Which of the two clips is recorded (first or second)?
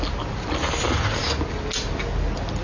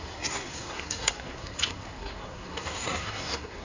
first